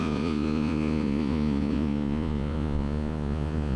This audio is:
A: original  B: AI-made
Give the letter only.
B